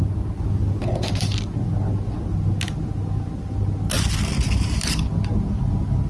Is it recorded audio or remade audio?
recorded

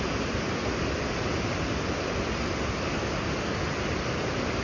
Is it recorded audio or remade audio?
recorded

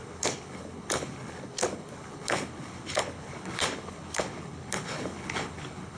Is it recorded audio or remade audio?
remade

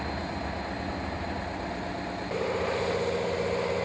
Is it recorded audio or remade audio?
recorded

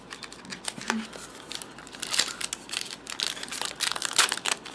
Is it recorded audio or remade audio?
recorded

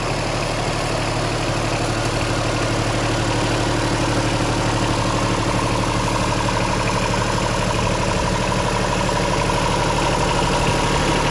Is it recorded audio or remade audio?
recorded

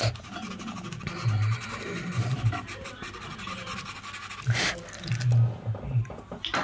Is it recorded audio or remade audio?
recorded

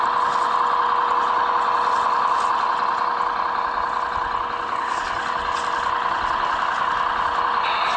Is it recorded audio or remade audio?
recorded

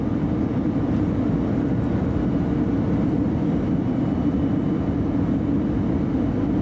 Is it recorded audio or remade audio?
recorded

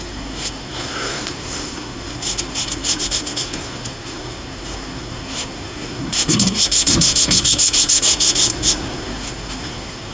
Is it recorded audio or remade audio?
remade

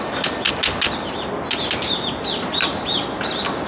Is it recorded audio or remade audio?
recorded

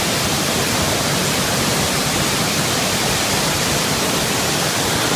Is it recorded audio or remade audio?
recorded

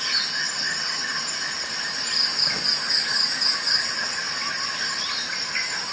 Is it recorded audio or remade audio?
recorded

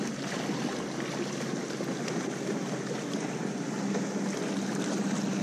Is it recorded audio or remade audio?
recorded